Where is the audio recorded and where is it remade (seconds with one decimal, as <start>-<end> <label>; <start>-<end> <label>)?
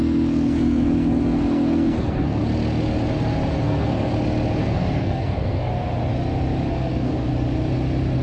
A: 0.0-2.4 remade; 2.4-3.6 recorded; 3.6-4.1 remade; 4.1-4.6 recorded; 4.6-5.7 remade; 5.7-6.7 recorded; 6.7-7.3 remade; 7.3-8.2 recorded